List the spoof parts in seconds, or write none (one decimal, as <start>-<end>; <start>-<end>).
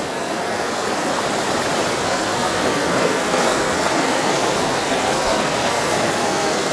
0.0-1.1; 1.9-6.7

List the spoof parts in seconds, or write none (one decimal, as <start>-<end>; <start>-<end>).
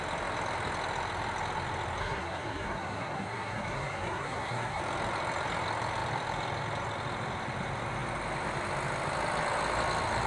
2.0-4.8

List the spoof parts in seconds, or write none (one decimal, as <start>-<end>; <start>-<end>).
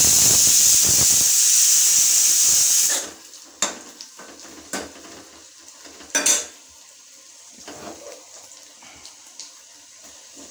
none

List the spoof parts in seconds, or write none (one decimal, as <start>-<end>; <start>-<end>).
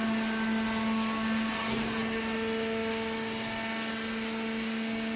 none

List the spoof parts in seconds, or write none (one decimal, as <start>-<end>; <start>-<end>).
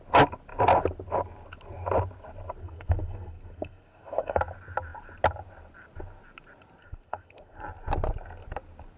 2.6-4.4; 6.8-7.6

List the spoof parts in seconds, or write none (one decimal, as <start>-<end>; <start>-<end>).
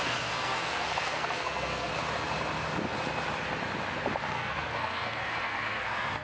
0.0-1.9; 4.3-6.2